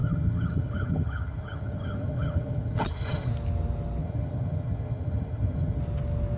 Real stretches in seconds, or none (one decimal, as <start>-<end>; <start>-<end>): 3.3-4.0; 5.8-6.4